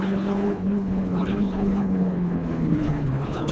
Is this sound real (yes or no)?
no